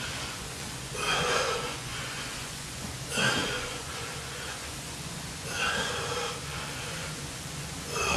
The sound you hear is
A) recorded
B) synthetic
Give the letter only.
B